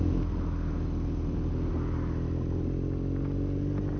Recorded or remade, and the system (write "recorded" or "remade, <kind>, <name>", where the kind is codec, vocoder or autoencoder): recorded